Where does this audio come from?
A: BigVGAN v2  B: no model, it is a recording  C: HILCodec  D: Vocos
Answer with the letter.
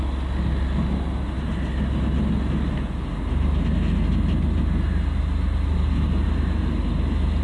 B